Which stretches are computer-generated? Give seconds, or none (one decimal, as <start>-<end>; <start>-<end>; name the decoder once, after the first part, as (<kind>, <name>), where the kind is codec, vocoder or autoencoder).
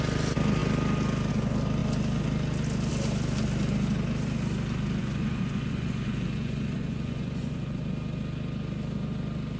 5.0-7.8 (vocoder, Vocos)